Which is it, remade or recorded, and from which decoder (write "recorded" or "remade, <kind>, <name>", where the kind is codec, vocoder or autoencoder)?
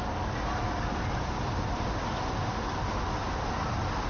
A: recorded